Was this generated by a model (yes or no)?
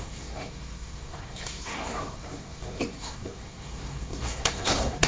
yes